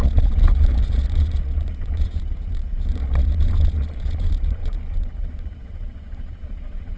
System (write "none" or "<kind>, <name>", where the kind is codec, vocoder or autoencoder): vocoder, Vocos